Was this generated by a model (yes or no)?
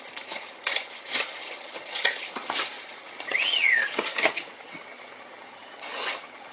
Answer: yes